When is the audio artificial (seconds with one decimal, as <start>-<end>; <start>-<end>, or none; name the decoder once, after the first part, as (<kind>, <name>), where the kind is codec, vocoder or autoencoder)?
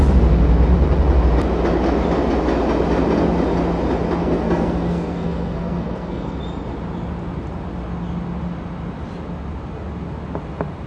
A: 4.2-6.4 (codec, SNAC)